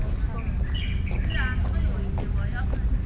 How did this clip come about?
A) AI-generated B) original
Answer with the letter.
B